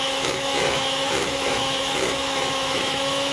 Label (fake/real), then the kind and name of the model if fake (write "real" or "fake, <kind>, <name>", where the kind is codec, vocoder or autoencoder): fake, autoencoder, DAC-VAE